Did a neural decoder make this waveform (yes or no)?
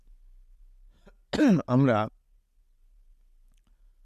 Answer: no